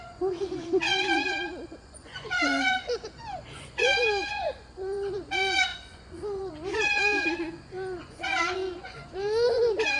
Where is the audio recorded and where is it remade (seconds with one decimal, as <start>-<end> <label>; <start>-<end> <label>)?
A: 0.0-10.0 remade